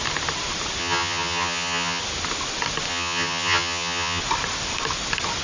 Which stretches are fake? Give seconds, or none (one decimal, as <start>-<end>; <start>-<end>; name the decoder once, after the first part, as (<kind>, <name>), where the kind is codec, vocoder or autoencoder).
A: 0.8-2.0 (vocoder, HiFi-GAN); 2.9-4.2